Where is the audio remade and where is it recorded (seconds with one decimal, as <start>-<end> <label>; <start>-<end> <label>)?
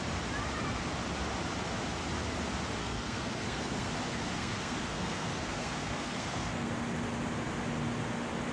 0.0-2.8 recorded; 2.8-3.9 remade; 3.9-4.4 recorded; 4.4-6.7 remade; 6.7-8.5 recorded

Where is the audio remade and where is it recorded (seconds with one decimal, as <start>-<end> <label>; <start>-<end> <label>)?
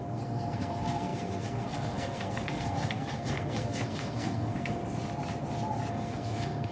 0.0-4.8 remade; 4.8-5.9 recorded; 5.9-6.7 remade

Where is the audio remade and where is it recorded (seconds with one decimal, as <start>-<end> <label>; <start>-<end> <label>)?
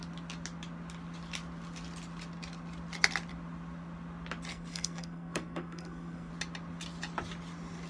0.0-4.5 recorded; 4.5-6.3 remade; 6.3-7.9 recorded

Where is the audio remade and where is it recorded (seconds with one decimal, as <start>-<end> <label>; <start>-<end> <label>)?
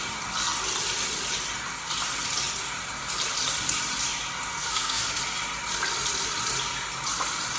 0.0-4.5 recorded; 4.5-5.2 remade; 5.2-7.6 recorded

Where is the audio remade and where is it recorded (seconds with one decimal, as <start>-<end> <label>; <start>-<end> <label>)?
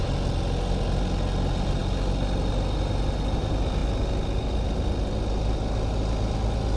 0.0-6.8 recorded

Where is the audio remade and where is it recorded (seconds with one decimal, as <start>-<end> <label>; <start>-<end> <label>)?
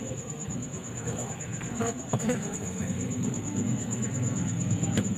0.0-5.2 remade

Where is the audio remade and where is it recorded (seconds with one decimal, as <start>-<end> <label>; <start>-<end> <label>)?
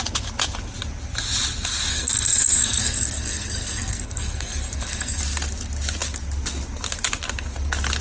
0.0-1.9 recorded; 1.9-5.2 remade; 5.2-8.0 recorded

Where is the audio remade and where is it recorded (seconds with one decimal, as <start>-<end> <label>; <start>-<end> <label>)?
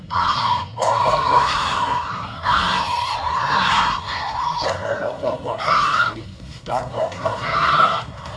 0.0-8.4 remade